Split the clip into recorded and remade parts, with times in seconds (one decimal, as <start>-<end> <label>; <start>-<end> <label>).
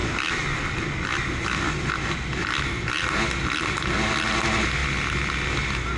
0.0-6.0 recorded